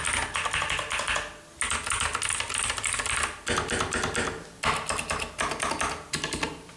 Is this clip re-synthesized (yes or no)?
no